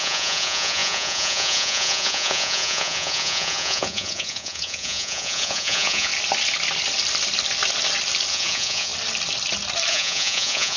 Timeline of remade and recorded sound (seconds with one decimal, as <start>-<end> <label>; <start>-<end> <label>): 0.0-6.1 remade; 6.1-8.3 recorded; 8.3-8.9 remade; 8.9-9.9 recorded; 9.9-10.8 remade